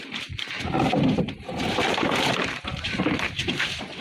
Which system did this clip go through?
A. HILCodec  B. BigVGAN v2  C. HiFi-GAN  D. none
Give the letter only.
B